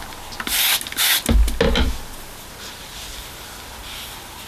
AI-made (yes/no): no